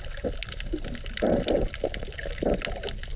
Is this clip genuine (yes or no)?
yes